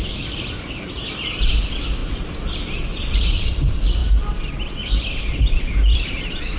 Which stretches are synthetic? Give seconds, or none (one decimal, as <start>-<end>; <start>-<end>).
0.0-4.0; 5.6-6.6